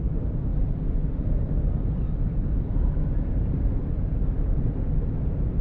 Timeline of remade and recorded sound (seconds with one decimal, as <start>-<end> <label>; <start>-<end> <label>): 0.0-5.6 recorded